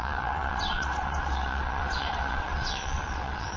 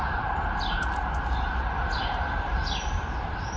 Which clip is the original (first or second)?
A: second